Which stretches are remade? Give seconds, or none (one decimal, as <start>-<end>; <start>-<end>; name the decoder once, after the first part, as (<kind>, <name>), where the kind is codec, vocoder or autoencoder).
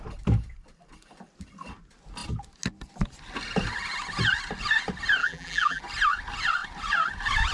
5.2-5.8 (vocoder, BigVGAN v2)